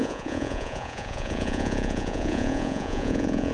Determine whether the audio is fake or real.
fake